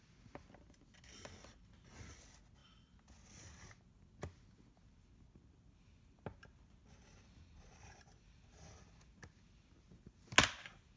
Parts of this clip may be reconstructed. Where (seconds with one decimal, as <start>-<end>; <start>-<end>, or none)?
none